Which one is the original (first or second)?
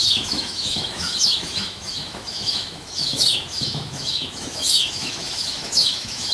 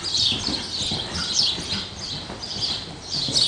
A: second